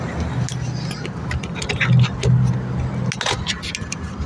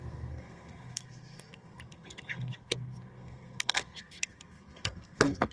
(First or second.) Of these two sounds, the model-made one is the second